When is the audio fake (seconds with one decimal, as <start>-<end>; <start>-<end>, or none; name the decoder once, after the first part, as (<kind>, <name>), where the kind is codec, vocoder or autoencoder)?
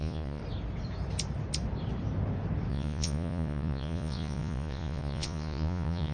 0.0-0.4 (vocoder, Vocos); 2.7-6.1